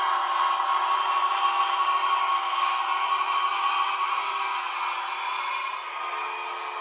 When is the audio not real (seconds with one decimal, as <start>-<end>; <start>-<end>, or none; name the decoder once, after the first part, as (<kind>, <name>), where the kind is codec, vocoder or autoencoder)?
2.3-2.8 (codec, SNAC); 4.1-4.7